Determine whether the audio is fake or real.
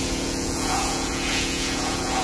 fake